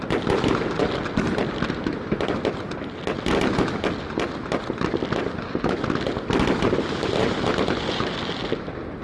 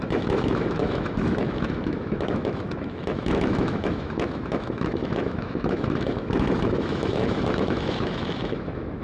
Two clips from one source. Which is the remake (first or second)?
second